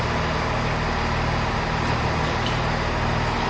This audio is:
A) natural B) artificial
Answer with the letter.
A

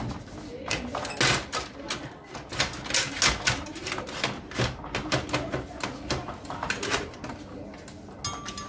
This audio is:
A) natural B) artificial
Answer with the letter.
A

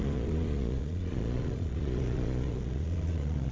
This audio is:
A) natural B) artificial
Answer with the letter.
B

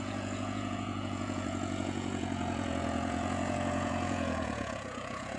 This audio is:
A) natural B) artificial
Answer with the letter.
B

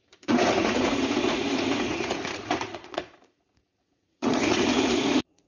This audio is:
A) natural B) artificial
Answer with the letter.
B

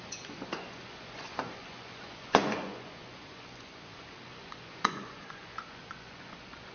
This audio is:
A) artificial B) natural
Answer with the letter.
A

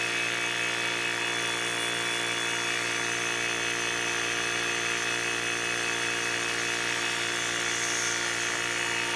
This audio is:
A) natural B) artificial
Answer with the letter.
A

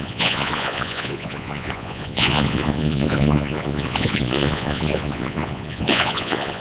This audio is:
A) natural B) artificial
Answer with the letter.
B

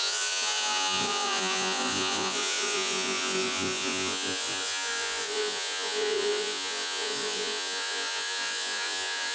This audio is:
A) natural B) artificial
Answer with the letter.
B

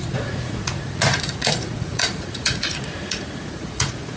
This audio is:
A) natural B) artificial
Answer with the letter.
B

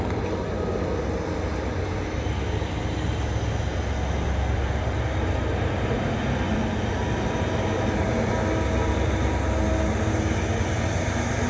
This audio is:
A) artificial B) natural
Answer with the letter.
B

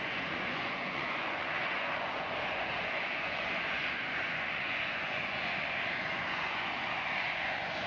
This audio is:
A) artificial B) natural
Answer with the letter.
A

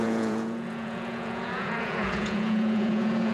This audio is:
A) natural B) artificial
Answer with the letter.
B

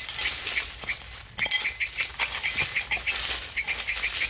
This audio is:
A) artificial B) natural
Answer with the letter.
B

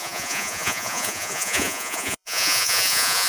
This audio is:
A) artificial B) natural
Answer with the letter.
A